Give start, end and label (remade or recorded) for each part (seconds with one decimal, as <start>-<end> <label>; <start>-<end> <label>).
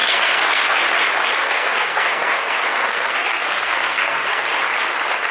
0.0-0.8 remade; 0.8-1.4 recorded; 1.4-4.4 remade; 4.4-5.3 recorded